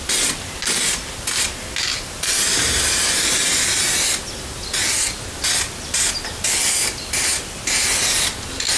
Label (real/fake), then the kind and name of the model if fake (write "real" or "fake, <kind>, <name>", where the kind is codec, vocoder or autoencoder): real